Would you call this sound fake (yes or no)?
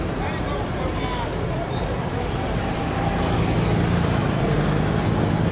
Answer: no